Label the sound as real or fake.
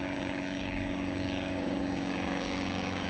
fake